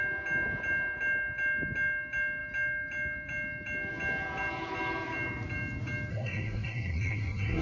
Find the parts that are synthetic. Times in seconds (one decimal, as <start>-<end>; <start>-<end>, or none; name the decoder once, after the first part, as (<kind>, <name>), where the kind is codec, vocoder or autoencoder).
6.1-7.6 (codec, SNAC)